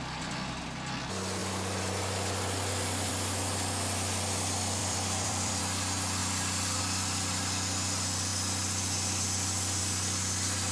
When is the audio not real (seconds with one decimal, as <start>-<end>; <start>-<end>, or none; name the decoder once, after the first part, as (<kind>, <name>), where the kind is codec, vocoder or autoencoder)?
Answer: 4.8-5.6 (vocoder, BigVGAN v2)